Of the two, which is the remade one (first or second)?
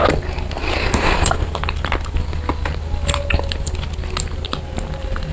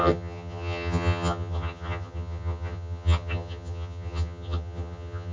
second